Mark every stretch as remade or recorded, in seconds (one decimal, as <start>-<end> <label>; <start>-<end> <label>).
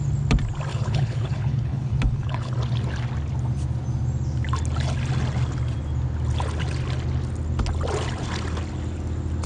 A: 0.0-0.7 recorded; 0.7-2.5 remade; 2.5-9.5 recorded